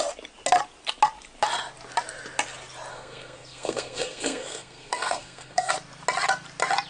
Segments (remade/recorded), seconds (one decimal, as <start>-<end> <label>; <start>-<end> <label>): 0.0-2.9 recorded; 2.9-5.7 remade; 5.7-6.9 recorded